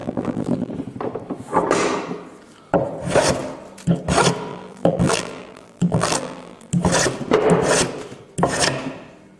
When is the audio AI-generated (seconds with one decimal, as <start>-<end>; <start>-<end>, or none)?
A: 0.0-0.7; 4.5-6.7